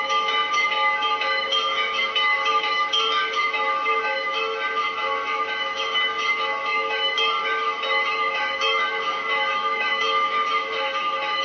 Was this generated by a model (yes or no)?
yes